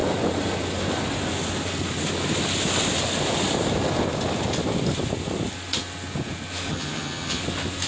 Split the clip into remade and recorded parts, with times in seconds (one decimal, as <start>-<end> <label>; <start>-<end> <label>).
0.0-6.7 recorded; 6.7-7.4 remade; 7.4-7.9 recorded